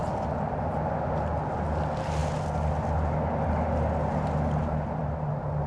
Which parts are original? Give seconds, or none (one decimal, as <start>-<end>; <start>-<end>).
0.0-5.7